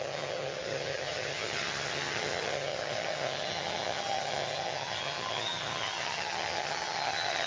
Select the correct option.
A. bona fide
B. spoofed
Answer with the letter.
B